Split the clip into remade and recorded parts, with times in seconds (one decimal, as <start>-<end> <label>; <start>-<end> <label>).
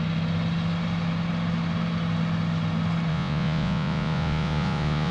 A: 0.0-3.1 recorded; 3.1-5.1 remade